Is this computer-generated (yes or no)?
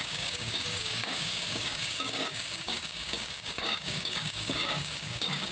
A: yes